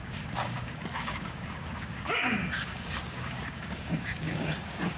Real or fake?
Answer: fake